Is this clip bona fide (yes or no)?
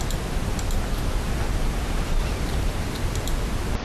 yes